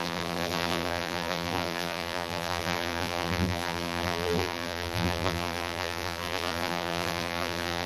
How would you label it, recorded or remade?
remade